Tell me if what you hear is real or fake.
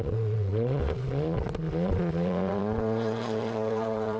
fake